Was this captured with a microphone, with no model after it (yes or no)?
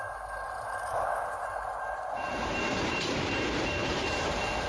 no